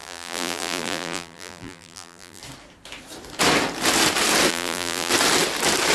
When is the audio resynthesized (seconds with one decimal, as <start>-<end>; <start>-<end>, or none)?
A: 0.0-2.4; 4.5-5.1